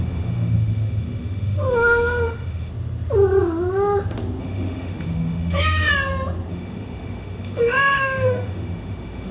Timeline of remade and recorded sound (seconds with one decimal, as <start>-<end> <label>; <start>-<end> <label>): 0.0-2.7 remade; 2.7-4.4 recorded; 4.4-5.9 remade; 5.9-6.5 recorded; 6.5-9.3 remade